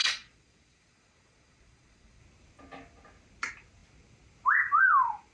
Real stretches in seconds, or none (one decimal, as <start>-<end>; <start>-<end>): 2.2-5.3